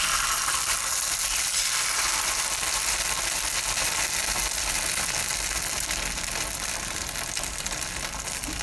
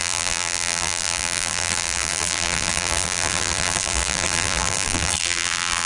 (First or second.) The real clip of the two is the first